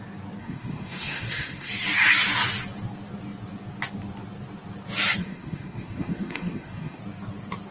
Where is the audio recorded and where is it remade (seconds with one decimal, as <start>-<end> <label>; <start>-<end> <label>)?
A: 0.0-0.4 recorded; 0.4-1.7 remade; 1.7-5.2 recorded; 5.2-7.0 remade; 7.0-7.7 recorded